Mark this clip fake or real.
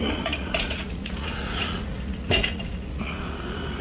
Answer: fake